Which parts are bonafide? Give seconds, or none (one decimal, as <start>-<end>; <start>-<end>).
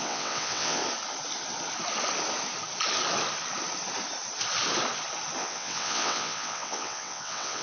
0.8-5.4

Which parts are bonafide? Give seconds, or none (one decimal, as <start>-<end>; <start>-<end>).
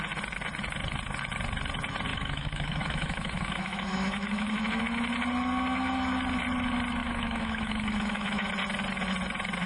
0.0-2.1; 4.8-7.0; 8.5-9.7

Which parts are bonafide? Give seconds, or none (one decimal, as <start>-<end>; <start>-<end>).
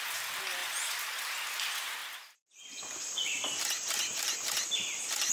0.0-5.3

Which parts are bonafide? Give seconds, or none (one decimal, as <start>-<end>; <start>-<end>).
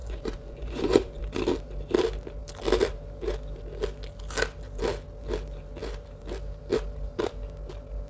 1.2-8.1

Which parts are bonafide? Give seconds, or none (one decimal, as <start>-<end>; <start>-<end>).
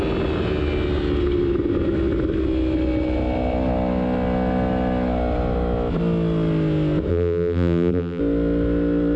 0.0-7.1; 8.2-9.2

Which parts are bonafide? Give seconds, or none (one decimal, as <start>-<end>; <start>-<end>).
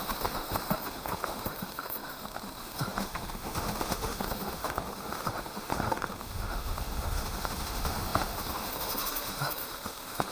none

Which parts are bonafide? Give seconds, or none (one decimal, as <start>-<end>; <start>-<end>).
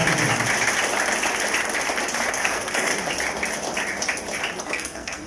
0.0-2.3; 2.9-4.6